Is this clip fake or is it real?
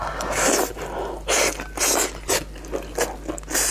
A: real